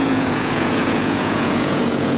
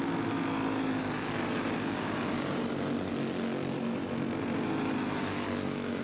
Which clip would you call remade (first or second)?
first